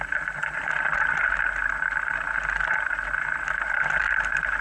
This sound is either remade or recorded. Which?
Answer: recorded